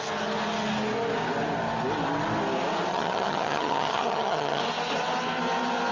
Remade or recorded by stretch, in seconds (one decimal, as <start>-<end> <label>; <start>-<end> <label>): 0.0-2.9 recorded; 2.9-4.6 remade; 4.6-5.9 recorded